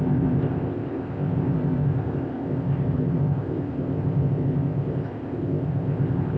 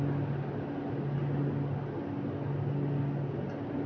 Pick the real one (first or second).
second